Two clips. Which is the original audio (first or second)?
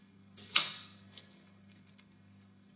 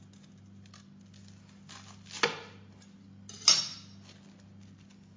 second